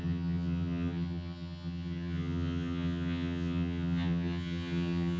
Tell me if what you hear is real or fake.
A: fake